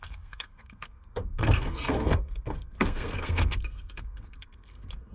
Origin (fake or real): fake